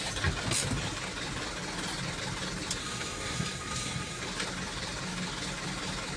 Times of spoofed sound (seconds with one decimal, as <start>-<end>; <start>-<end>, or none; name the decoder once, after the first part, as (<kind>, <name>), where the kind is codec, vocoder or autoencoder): 2.8-4.2 (codec, SNAC)